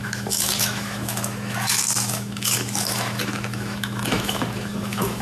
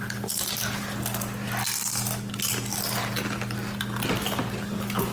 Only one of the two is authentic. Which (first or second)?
second